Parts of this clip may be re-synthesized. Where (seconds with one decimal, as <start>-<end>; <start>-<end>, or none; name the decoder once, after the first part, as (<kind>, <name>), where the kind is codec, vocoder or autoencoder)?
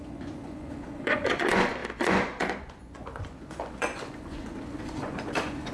0.0-5.7 (vocoder, Vocos)